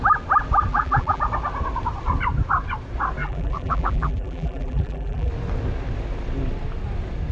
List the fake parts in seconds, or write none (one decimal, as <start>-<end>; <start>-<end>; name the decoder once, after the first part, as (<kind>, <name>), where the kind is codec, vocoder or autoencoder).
0.7-1.2 (vocoder, BigVGAN v2); 3.2-5.3